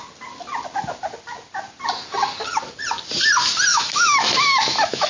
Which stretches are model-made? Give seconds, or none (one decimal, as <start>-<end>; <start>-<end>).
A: 3.7-5.1